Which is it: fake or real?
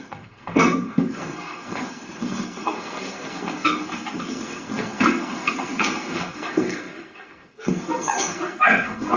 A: fake